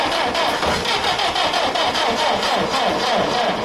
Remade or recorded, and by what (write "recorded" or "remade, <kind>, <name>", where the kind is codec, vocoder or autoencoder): recorded